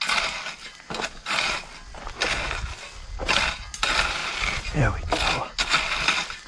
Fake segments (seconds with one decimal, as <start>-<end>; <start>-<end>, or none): none